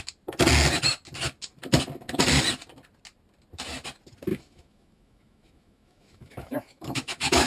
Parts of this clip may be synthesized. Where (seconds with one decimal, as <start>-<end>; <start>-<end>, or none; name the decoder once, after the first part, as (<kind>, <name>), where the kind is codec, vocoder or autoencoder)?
4.3-7.5 (autoencoder, DAC-VAE)